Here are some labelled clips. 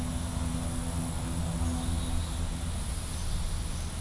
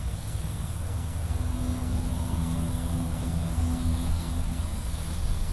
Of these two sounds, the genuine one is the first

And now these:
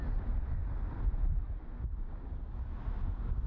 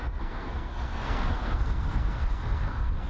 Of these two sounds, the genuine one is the first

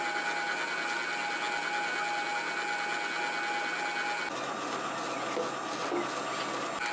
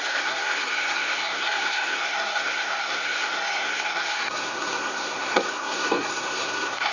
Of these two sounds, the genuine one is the first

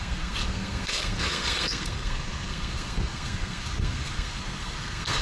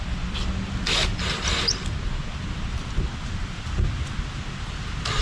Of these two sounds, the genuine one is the second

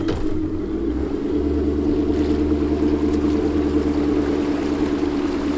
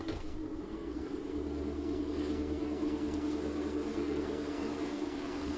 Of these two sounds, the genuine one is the first